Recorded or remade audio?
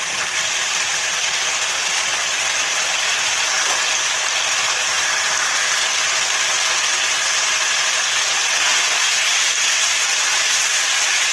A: recorded